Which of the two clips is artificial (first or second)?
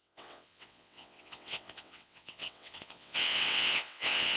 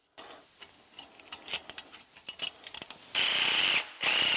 first